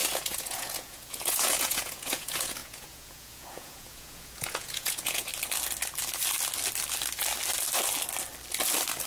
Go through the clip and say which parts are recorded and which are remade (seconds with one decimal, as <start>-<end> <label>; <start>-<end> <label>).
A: 0.0-5.3 remade; 5.3-9.1 recorded